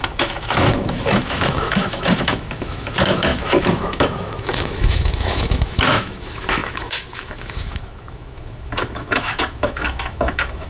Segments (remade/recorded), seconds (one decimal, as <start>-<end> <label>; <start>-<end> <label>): 0.0-10.7 remade

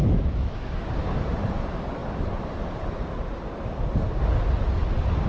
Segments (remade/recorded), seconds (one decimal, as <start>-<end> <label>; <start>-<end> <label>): 0.0-0.9 remade; 0.9-5.3 recorded

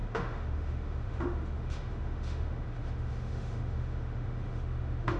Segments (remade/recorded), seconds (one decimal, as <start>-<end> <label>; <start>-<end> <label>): 0.0-5.2 remade